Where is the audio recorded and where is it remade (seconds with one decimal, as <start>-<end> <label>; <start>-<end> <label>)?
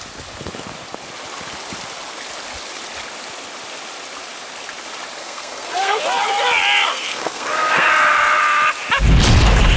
0.0-5.2 recorded; 5.2-6.0 remade; 6.0-6.9 recorded; 6.9-7.9 remade; 7.9-9.8 recorded